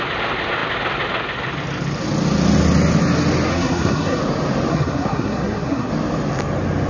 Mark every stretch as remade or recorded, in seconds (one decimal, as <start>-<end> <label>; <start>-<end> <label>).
0.0-3.5 recorded; 3.5-4.2 remade; 4.2-4.7 recorded; 4.7-5.9 remade; 5.9-6.9 recorded